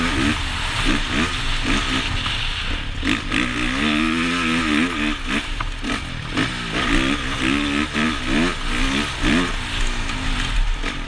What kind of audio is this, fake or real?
real